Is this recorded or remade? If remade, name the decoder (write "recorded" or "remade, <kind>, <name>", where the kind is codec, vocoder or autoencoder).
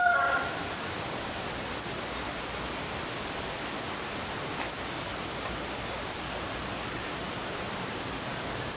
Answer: recorded